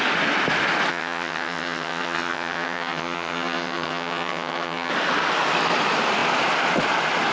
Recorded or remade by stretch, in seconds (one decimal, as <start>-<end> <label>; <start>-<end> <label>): 0.0-0.9 recorded; 0.9-4.9 remade; 4.9-7.3 recorded